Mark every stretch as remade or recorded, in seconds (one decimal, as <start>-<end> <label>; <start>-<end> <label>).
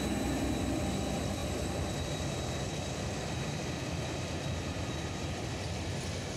0.0-1.4 recorded; 1.4-5.2 remade; 5.2-6.4 recorded